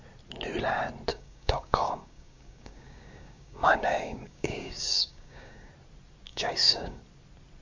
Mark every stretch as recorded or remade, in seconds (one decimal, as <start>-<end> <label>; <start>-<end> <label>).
0.0-1.1 recorded; 1.1-5.7 remade; 5.7-6.3 recorded; 6.3-7.0 remade; 7.0-7.6 recorded